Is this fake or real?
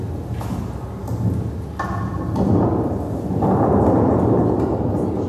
real